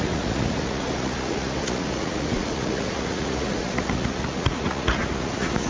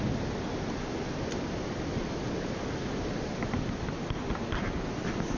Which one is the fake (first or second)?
first